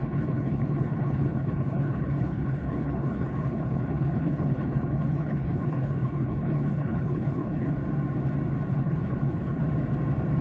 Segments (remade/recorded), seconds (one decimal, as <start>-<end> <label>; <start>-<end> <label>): 0.0-7.8 remade; 7.8-8.7 recorded; 8.7-9.6 remade; 9.6-10.4 recorded